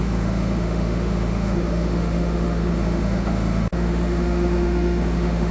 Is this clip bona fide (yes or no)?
no